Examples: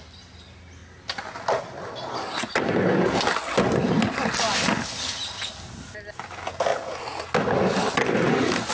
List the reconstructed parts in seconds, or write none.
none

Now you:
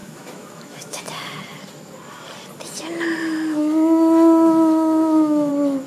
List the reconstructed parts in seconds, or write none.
0.0-1.0 (autoencoder, DAC-VAE); 3.2-5.5

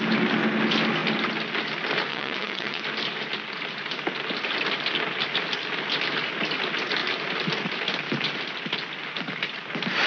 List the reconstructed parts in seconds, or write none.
2.1-2.8 (vocoder, WaveNeXt)

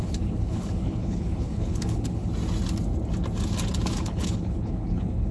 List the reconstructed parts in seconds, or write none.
0.0-2.3 (codec, HILCodec); 4.0-5.3